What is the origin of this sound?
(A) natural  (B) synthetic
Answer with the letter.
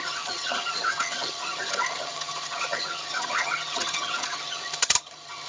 B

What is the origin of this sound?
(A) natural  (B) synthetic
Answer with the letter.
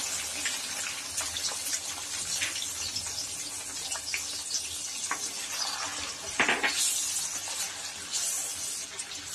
A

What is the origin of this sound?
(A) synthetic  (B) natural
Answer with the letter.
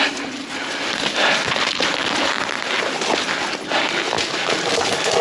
B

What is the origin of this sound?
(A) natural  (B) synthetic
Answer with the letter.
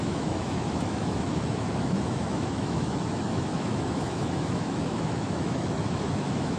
B